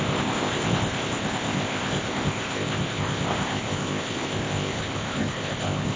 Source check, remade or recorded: remade